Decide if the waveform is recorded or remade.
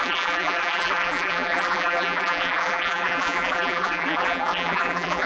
remade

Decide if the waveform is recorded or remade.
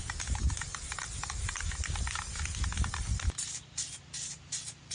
recorded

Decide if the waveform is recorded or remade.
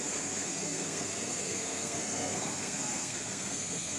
remade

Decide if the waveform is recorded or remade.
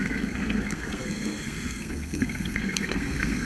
remade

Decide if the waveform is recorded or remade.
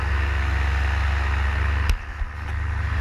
recorded